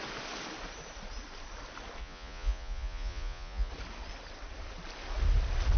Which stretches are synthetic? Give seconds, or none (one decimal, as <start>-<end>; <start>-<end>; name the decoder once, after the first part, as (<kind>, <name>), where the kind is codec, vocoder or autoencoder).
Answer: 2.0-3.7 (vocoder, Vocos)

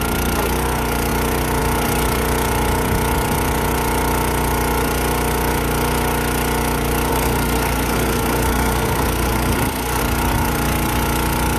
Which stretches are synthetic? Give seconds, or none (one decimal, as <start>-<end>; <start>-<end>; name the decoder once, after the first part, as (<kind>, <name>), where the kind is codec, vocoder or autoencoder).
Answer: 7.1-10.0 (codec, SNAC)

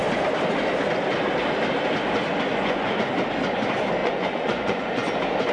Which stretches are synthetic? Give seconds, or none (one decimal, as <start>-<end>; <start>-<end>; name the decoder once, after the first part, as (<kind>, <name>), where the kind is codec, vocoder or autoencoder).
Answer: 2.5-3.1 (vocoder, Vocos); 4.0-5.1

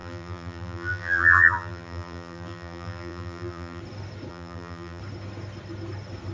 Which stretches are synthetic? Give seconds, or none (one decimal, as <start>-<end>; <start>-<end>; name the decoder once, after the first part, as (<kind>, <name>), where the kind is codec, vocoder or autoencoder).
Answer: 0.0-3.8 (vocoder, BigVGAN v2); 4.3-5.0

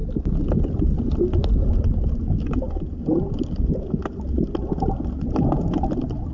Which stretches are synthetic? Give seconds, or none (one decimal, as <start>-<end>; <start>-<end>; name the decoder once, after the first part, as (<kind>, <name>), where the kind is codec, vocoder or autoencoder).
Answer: none

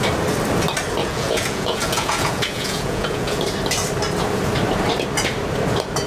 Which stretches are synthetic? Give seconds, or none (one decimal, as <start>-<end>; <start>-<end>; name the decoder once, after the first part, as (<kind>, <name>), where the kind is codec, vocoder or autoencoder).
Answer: 1.0-3.4 (vocoder, Vocos)